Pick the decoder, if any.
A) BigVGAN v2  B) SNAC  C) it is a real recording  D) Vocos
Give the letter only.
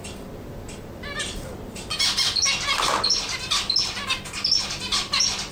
C